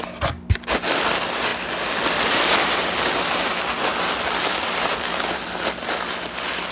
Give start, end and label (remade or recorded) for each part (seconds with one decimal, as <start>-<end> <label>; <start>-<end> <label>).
0.0-6.7 recorded